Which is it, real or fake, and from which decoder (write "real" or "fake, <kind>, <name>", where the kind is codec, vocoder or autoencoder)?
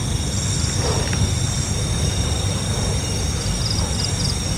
real